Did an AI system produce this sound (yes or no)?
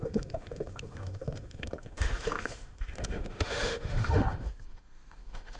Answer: yes